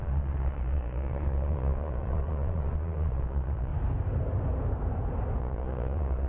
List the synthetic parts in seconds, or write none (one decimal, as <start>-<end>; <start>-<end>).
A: 0.0-3.7; 5.4-6.3